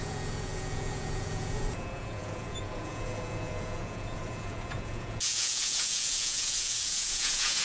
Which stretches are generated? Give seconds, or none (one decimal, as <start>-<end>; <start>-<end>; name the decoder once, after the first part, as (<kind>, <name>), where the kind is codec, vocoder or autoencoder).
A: 0.0-7.6 (vocoder, Vocos)